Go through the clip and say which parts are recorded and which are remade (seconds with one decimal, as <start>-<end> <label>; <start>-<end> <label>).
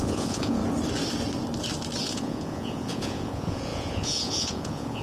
0.0-0.6 remade; 0.6-2.0 recorded; 2.0-5.0 remade